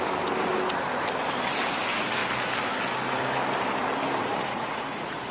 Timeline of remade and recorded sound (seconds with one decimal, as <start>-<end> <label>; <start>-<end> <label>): 0.0-4.2 recorded; 4.2-5.3 remade